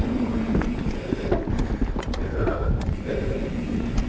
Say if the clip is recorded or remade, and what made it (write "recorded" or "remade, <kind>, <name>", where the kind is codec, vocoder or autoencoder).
recorded